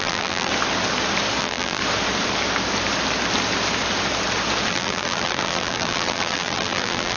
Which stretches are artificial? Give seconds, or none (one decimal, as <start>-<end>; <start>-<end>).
0.0-0.5; 1.4-1.8; 4.7-7.2